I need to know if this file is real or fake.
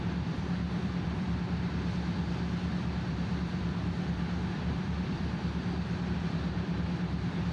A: fake